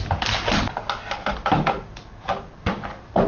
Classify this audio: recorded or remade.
recorded